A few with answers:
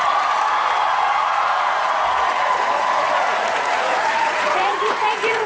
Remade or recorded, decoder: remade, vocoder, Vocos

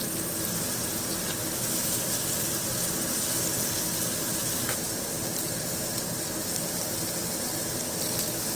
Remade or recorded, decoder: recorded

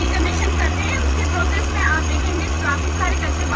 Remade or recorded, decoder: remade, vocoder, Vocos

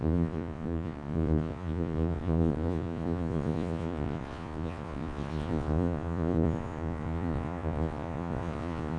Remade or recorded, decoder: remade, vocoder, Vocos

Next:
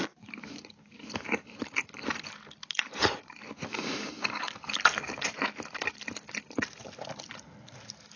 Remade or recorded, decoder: recorded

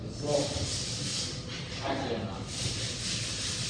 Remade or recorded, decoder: recorded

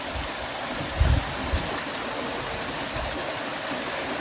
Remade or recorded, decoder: recorded